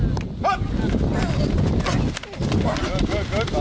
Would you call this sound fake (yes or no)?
no